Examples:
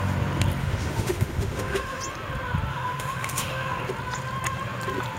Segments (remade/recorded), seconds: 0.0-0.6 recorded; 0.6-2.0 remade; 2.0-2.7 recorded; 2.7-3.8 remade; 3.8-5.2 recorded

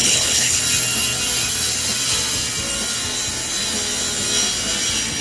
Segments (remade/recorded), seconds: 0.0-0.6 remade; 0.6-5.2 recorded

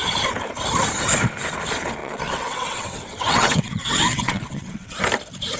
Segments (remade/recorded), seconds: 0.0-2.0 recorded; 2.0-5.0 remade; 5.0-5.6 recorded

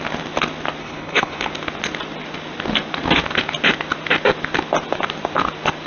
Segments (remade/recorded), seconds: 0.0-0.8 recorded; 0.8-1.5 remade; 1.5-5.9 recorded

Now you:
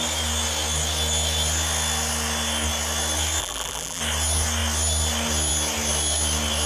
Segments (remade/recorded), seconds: 0.0-3.4 recorded; 3.4-4.0 remade; 4.0-6.7 recorded

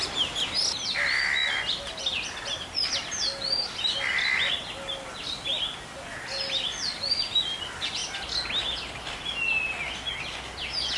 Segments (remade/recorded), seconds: 0.0-11.0 recorded